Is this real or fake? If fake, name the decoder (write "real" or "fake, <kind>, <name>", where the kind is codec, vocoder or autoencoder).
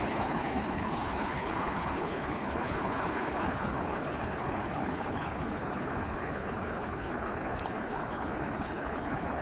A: fake, codec, HILCodec